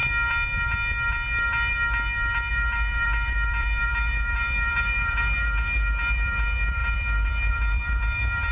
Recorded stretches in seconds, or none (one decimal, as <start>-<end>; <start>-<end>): 0.0-2.5